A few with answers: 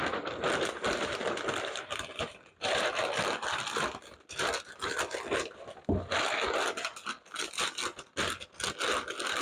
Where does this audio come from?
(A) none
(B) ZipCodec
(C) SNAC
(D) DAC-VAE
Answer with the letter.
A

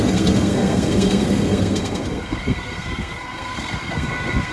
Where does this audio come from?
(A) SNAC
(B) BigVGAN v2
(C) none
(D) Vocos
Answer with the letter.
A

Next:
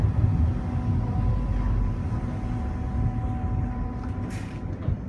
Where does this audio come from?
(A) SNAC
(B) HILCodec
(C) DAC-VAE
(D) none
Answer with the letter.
D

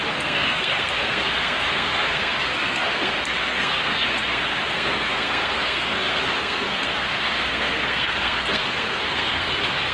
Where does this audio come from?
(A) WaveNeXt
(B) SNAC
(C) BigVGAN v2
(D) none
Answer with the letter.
B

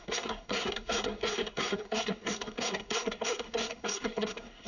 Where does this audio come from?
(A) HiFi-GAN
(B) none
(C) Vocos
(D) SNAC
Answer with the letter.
D